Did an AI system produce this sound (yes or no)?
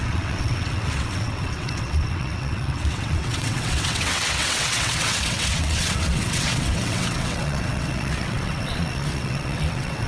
yes